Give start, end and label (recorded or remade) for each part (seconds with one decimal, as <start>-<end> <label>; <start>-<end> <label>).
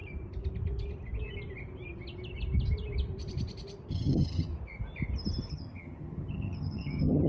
0.0-3.9 recorded; 3.9-4.5 remade; 4.5-5.5 recorded; 5.5-7.3 remade